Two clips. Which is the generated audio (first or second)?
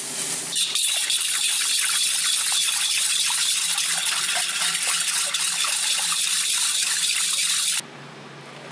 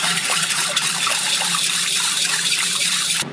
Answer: second